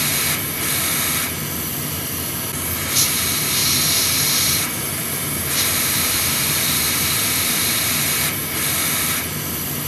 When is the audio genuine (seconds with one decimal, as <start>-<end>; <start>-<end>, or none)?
0.0-1.7; 2.3-3.6; 7.8-9.9